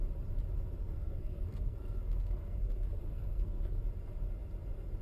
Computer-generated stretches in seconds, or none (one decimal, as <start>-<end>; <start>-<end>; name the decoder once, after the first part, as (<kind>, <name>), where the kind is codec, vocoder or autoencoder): 0.8-3.8 (codec, SNAC)